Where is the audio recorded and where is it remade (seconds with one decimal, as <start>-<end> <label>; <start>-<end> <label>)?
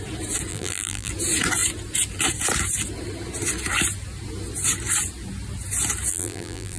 0.0-0.5 recorded; 0.5-1.1 remade; 1.1-6.1 recorded; 6.1-6.8 remade